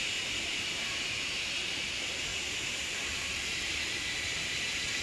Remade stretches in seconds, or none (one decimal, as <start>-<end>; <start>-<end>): 0.5-1.8; 2.3-3.6